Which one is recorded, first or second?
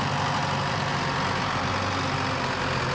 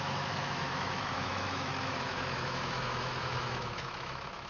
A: first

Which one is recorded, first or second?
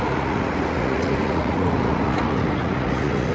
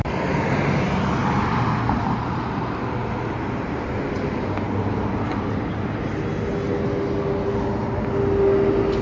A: second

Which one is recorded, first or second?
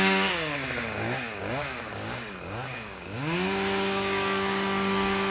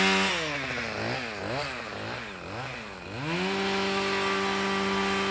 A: second